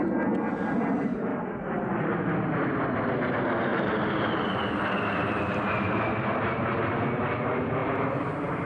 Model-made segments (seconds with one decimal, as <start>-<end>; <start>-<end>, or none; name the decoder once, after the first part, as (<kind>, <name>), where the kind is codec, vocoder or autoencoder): 3.7-4.6 (vocoder, BigVGAN v2); 7.8-8.7